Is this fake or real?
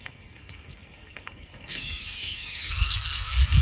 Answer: fake